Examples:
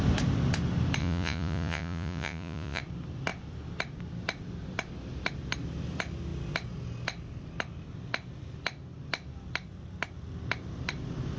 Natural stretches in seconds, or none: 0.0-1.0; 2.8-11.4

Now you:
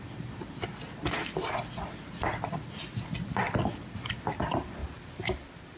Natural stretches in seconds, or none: 0.0-5.8

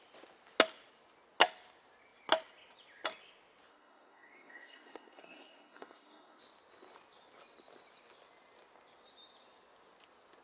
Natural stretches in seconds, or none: 0.0-3.7; 6.4-10.4